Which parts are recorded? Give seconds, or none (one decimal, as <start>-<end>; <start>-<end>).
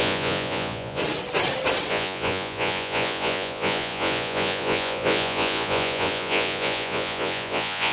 1.0-1.9